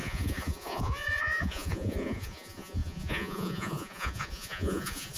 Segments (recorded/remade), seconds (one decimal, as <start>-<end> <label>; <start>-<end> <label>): 0.0-5.2 remade